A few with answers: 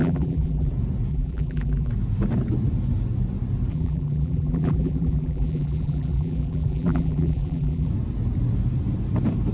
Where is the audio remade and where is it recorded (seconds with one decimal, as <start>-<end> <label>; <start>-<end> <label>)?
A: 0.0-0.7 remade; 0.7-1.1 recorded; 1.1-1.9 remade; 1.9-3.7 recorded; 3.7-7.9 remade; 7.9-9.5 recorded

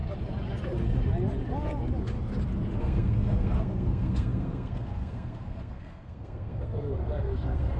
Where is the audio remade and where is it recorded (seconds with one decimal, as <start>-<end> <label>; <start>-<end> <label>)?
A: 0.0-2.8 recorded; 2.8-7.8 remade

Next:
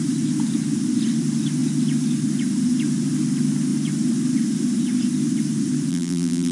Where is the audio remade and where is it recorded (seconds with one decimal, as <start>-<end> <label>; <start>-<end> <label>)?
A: 0.0-5.9 recorded; 5.9-6.5 remade